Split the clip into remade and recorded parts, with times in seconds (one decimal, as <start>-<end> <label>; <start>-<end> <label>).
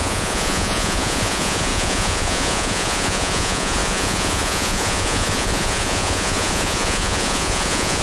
0.0-8.0 remade